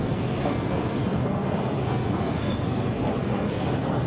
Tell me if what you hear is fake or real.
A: fake